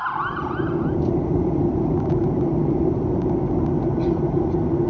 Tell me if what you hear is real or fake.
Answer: real